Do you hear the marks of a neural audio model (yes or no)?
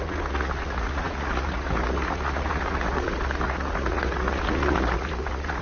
yes